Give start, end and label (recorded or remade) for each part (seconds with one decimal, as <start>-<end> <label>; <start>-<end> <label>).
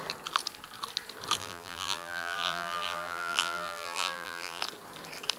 0.0-1.4 recorded; 1.4-4.6 remade; 4.6-5.4 recorded